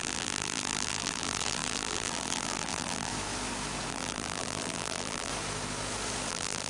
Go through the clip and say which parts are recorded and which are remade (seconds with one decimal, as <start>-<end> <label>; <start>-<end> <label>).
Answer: 0.0-3.1 remade; 3.1-3.9 recorded; 3.9-5.3 remade; 5.3-6.3 recorded; 6.3-6.7 remade